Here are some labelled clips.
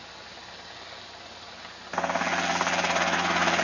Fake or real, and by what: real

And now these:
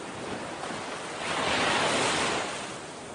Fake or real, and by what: real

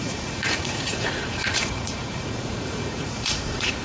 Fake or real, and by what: fake, vocoder, Vocos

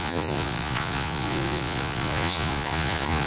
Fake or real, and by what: fake, vocoder, Vocos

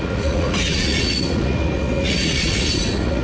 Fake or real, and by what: fake, vocoder, Vocos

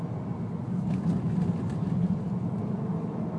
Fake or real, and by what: real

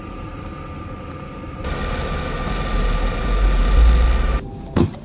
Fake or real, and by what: real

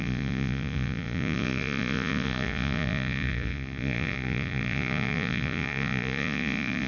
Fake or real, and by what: fake, vocoder, Vocos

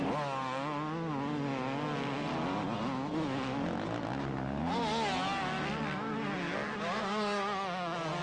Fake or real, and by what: real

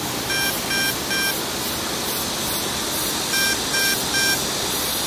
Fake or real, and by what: real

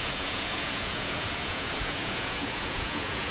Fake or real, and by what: fake, vocoder, Vocos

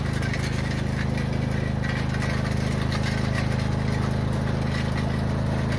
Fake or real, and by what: real